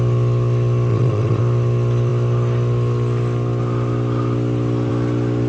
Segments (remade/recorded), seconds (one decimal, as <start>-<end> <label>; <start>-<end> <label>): 0.0-0.9 recorded; 0.9-1.4 remade; 1.4-5.5 recorded